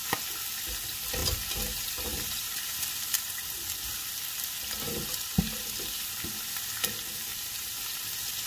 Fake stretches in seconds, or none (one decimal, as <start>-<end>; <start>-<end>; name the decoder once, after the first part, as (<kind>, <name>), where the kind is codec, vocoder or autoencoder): 1.2-2.7 (vocoder, BigVGAN v2); 7.3-7.8